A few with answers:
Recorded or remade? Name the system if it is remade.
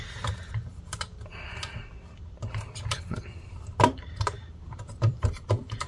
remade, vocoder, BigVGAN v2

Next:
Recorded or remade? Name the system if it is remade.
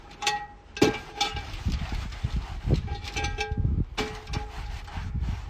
recorded